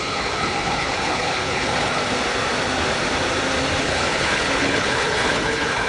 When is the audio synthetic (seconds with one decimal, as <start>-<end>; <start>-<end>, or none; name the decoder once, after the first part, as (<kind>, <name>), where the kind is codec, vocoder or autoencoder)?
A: 0.0-2.0 (codec, HILCodec); 3.8-5.9